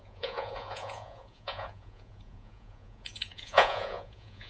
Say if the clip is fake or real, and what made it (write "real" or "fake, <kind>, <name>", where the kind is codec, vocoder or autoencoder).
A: fake, vocoder, Vocos